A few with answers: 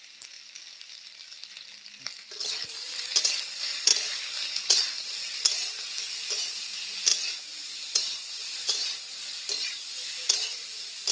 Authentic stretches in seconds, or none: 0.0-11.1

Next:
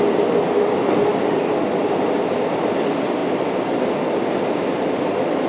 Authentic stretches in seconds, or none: 0.0-5.5

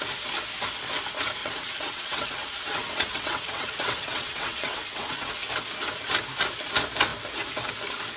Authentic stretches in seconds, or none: 0.0-1.4; 5.3-8.2

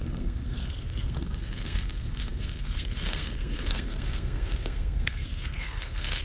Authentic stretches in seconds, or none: none